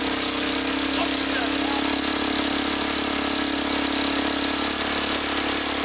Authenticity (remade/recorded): recorded